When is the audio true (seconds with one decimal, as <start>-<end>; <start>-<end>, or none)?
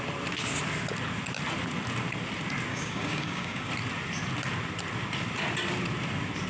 0.0-2.7; 3.7-6.5